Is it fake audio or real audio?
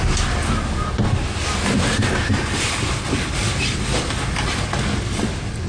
real